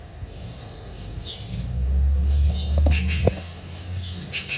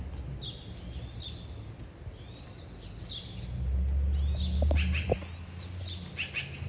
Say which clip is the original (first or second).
second